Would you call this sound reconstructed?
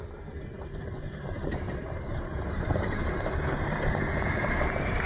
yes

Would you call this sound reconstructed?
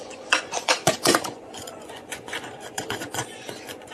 yes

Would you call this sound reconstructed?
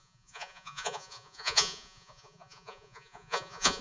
yes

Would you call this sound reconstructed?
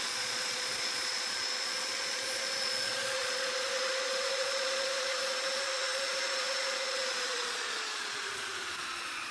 yes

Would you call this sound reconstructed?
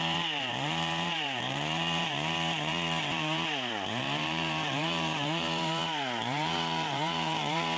yes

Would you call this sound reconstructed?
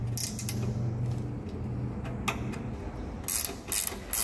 no